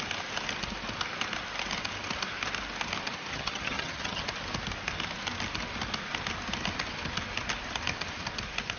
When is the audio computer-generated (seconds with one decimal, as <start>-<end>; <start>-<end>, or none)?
3.3-4.2